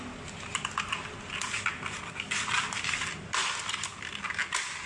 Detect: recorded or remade recorded